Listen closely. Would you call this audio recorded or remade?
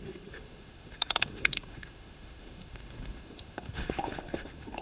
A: remade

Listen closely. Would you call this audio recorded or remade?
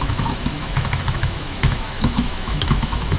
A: remade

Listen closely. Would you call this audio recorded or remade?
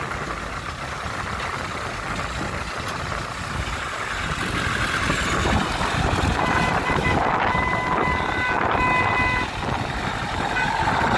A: recorded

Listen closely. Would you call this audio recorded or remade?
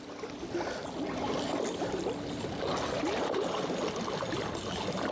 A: recorded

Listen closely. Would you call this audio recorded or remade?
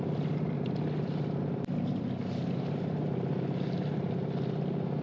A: recorded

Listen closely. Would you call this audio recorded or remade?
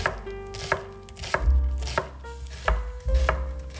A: recorded